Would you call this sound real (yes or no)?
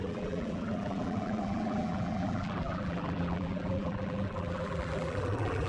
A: no